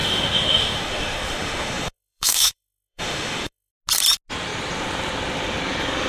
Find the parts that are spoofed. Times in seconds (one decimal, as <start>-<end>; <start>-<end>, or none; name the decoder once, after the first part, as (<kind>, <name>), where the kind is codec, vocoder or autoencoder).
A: 0.0-3.7 (autoencoder, DAC-VAE)